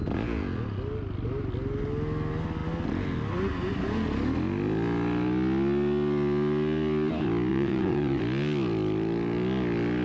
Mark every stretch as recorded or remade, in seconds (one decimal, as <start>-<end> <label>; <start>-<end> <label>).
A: 0.0-7.5 recorded; 7.5-8.2 remade; 8.2-10.0 recorded